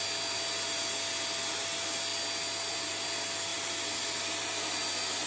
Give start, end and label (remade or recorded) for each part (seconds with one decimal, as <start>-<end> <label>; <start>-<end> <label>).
0.0-5.3 recorded